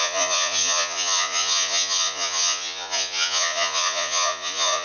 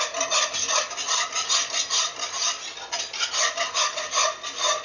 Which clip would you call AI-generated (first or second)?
first